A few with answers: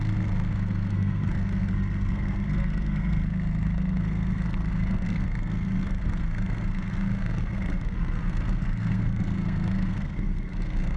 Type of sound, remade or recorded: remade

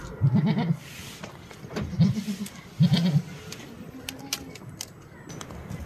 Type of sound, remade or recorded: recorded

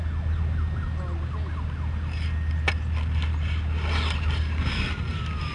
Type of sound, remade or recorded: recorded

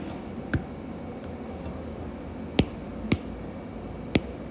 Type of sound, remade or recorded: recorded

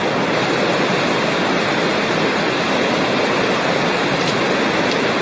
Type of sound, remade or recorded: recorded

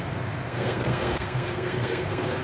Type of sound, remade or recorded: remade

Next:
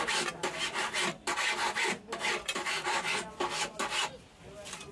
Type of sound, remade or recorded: recorded